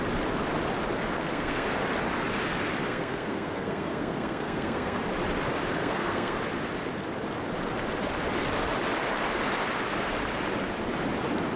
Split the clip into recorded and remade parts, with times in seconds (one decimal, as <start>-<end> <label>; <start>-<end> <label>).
0.0-1.2 recorded; 1.2-1.8 remade; 1.8-2.8 recorded; 2.8-5.0 remade; 5.0-5.8 recorded; 5.8-6.4 remade; 6.4-11.6 recorded